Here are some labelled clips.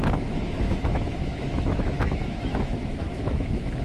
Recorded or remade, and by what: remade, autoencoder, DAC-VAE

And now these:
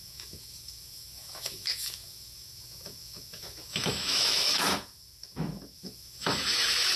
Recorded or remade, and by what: remade, autoencoder, DAC-VAE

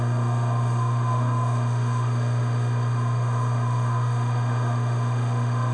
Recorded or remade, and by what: remade, autoencoder, DAC-VAE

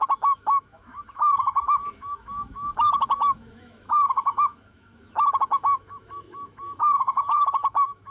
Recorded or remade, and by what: remade, autoencoder, DAC-VAE